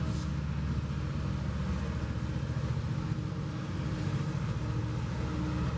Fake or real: real